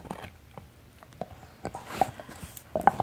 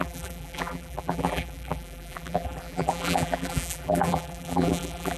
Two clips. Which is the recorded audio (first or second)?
first